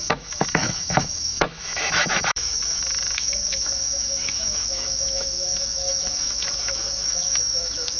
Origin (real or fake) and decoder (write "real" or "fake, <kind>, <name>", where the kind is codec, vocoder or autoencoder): fake, autoencoder, DAC-VAE